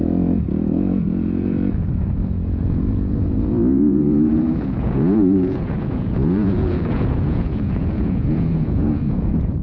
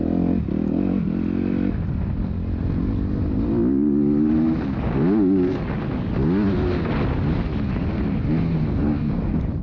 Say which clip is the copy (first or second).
first